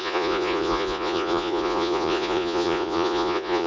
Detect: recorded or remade remade